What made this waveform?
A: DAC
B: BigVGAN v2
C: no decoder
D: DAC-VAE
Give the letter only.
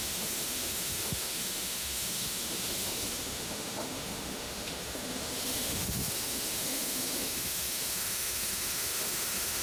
D